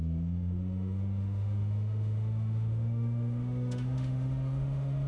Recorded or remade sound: remade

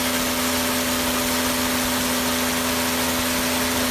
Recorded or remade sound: recorded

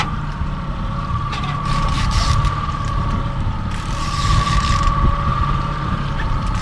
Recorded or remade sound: remade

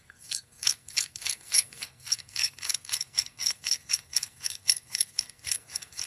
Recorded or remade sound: remade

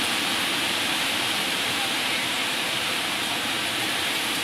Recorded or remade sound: remade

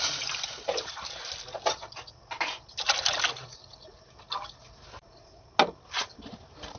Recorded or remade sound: recorded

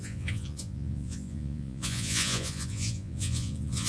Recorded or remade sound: remade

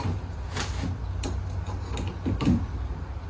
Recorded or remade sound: recorded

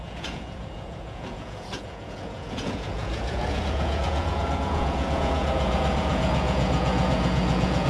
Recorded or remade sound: remade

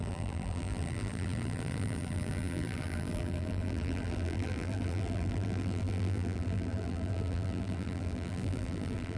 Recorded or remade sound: remade